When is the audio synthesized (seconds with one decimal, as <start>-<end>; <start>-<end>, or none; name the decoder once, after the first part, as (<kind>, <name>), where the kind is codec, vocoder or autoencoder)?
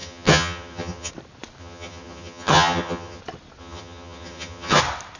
0.0-1.1 (vocoder, HiFi-GAN); 1.6-3.2; 3.6-4.8